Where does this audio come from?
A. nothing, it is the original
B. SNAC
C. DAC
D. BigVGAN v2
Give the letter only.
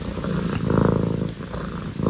A